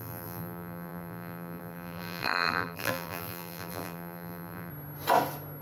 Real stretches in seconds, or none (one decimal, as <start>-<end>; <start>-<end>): 4.7-5.6